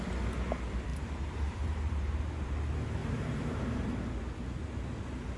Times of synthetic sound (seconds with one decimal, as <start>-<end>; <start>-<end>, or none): 0.9-2.5; 3.0-4.1